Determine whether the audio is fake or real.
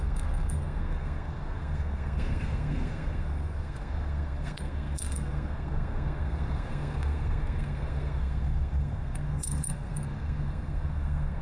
fake